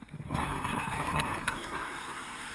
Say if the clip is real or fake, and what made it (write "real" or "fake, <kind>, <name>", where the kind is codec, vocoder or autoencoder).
fake, codec, SNAC